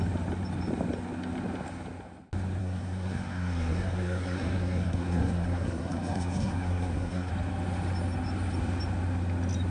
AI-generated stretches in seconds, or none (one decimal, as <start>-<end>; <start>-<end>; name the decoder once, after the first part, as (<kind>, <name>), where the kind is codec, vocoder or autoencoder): 2.6-7.3 (codec, SNAC)